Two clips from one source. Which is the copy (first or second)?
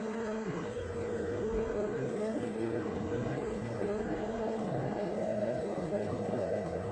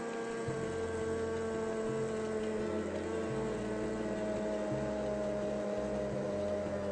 first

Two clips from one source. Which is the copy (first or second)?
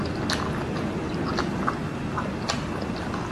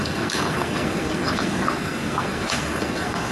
second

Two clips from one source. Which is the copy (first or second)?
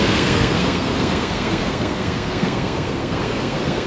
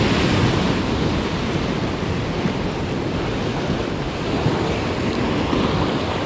first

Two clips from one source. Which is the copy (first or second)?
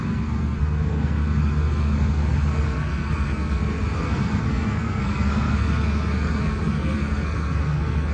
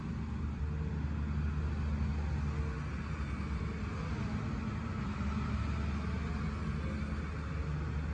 first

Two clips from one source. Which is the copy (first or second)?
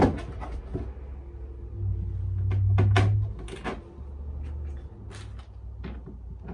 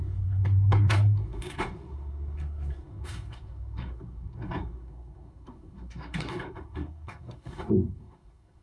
second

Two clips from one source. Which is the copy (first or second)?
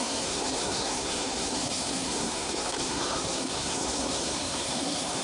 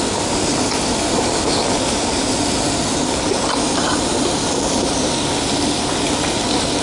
first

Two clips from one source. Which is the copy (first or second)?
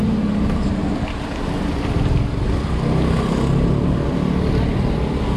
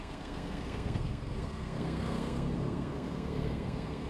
second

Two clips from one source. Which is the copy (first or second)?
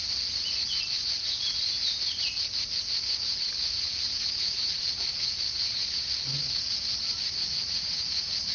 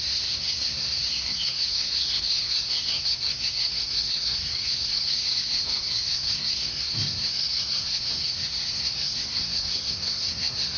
second